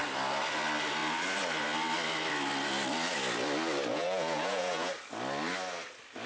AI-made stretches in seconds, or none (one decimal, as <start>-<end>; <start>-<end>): 3.9-4.9